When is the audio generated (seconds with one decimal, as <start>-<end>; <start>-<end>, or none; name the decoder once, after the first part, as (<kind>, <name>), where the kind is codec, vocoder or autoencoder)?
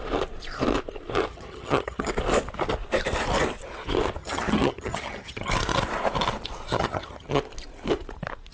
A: 1.3-2.1 (vocoder, HiFi-GAN); 4.2-5.5; 6.7-7.4